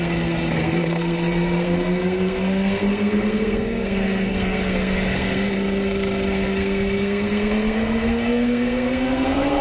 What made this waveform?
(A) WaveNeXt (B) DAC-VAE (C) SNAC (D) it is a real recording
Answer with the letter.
C